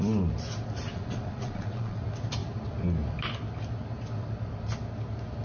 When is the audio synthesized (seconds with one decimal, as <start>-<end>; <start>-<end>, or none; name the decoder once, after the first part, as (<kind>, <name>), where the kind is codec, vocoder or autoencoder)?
0.9-2.0 (vocoder, Vocos)